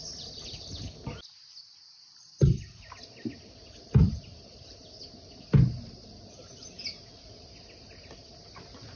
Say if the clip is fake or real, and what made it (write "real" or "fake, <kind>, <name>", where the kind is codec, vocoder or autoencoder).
real